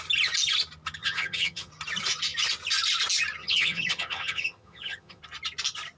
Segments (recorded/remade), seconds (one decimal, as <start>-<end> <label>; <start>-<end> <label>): 0.0-1.0 recorded; 1.0-1.7 remade; 1.7-3.4 recorded; 3.4-5.2 remade; 5.2-6.0 recorded